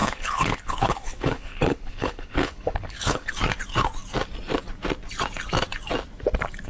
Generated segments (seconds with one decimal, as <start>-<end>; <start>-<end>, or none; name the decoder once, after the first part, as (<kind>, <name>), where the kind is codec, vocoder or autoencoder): 0.0-3.3 (codec, HILCodec)